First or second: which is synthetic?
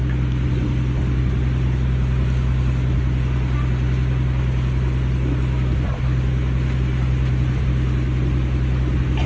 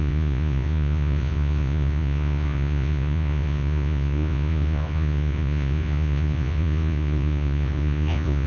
second